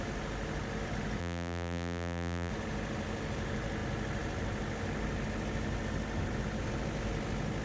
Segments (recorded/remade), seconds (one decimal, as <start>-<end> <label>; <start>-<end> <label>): 0.0-1.2 recorded; 1.2-2.5 remade; 2.5-7.6 recorded